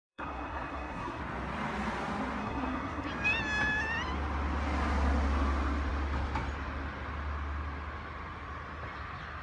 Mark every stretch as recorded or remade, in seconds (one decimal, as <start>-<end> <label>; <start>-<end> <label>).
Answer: 0.0-1.2 remade; 1.2-2.4 recorded; 2.4-3.1 remade; 3.1-9.4 recorded